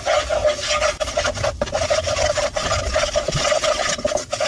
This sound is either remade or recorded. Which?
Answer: recorded